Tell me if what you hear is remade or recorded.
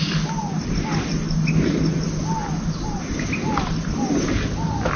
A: recorded